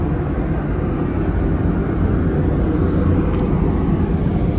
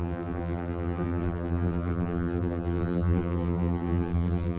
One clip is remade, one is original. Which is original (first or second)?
first